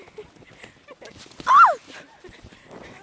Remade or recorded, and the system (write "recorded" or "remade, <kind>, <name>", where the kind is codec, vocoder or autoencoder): recorded